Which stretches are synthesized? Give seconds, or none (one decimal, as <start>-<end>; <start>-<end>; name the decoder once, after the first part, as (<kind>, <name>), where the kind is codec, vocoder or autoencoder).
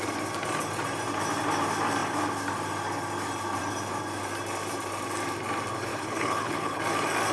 5.9-6.8 (codec, HILCodec)